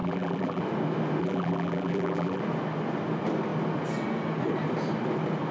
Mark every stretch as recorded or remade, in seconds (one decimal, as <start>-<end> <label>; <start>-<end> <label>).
0.0-0.6 remade; 0.6-1.2 recorded; 1.2-2.4 remade; 2.4-5.5 recorded